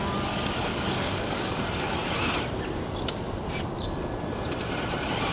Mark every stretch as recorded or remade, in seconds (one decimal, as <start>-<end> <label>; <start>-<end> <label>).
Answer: 0.0-0.7 recorded; 0.7-1.6 remade; 1.6-5.3 recorded